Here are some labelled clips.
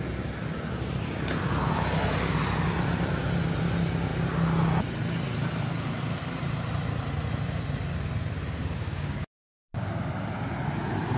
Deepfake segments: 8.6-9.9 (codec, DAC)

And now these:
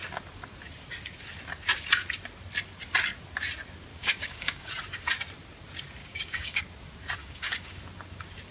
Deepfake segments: 3.9-4.7 (codec, DAC); 6.0-6.6; 7.2-7.8

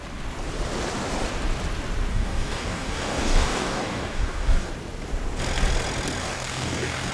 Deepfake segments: 2.1-4.7 (codec, DAC); 6.2-7.1

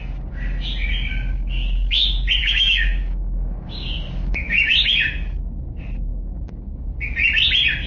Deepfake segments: 1.1-2.0 (codec, DAC); 2.4-4.9; 6.1-6.9

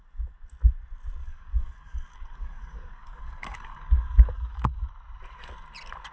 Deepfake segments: 1.2-4.9 (codec, DAC)

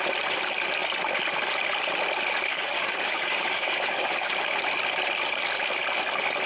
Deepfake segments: 2.5-4.3 (codec, DAC)